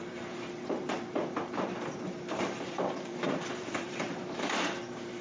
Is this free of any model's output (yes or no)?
no